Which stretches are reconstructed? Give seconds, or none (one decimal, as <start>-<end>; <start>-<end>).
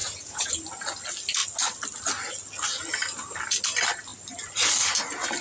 0.0-0.5